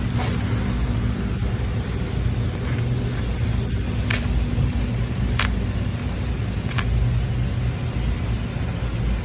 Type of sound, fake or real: real